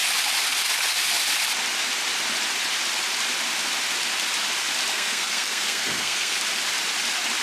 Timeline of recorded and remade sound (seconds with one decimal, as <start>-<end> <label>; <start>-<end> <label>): 0.0-4.9 recorded; 4.9-6.4 remade; 6.4-7.4 recorded